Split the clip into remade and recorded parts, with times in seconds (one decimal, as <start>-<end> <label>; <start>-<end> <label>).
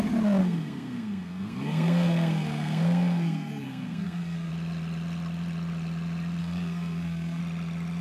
0.0-0.4 recorded; 0.4-4.5 remade; 4.5-6.4 recorded; 6.4-7.4 remade; 7.4-8.0 recorded